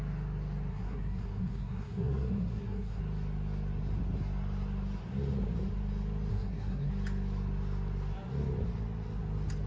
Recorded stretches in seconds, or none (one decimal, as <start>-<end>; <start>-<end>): 0.0-0.7; 3.0-6.3; 6.9-9.7